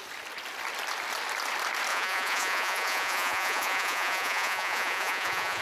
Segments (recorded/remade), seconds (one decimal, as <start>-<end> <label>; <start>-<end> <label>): 0.0-1.9 recorded; 1.9-5.6 remade